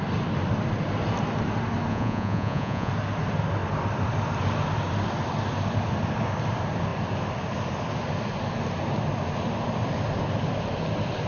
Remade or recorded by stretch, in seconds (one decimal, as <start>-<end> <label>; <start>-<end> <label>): 0.0-1.9 recorded; 1.9-2.9 remade; 2.9-11.3 recorded